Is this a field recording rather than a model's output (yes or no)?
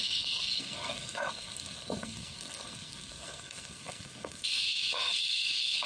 no